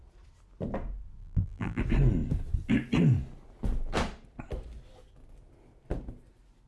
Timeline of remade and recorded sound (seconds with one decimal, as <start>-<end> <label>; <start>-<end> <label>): 0.0-1.2 recorded; 1.2-1.8 remade; 1.8-6.7 recorded